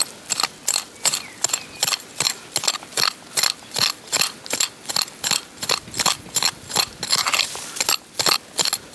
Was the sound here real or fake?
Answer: real